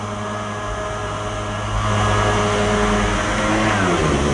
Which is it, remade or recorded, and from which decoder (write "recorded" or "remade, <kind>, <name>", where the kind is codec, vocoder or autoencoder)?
recorded